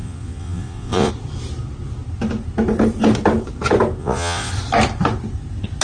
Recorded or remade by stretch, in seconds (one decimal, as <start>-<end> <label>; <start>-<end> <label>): 0.0-1.1 remade; 1.1-4.0 recorded; 4.0-4.5 remade; 4.5-5.8 recorded